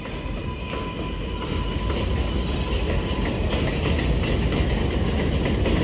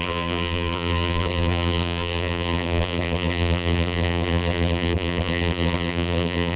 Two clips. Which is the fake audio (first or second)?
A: second